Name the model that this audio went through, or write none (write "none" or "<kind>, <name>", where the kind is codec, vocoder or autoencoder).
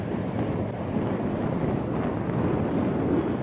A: none